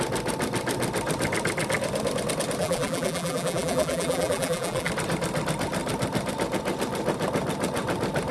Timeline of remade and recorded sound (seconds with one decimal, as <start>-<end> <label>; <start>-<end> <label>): 0.0-2.6 recorded; 2.6-4.9 remade; 4.9-8.3 recorded